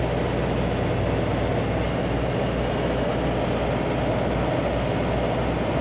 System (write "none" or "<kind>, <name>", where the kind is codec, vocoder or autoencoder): none